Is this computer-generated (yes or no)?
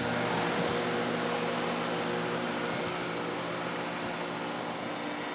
no